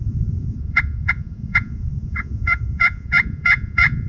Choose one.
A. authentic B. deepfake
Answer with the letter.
B